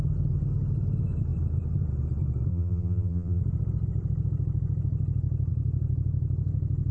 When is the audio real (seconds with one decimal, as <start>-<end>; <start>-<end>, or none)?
0.0-2.5; 3.4-6.9